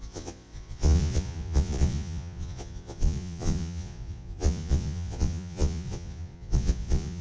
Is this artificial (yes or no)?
yes